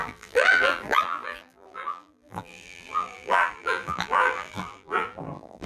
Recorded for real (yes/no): no